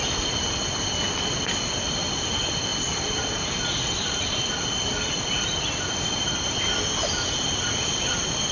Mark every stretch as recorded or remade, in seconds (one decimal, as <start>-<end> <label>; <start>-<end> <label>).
0.0-8.5 recorded